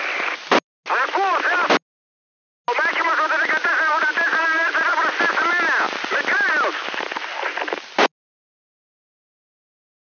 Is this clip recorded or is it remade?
recorded